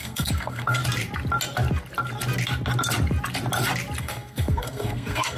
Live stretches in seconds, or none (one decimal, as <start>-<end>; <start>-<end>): 0.8-4.0